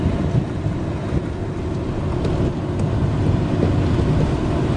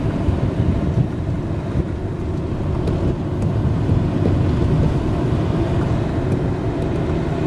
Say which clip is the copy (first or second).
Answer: second